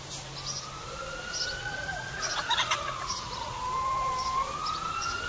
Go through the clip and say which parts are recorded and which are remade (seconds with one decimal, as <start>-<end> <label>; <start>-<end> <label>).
0.0-1.6 recorded; 1.6-3.6 remade; 3.6-5.3 recorded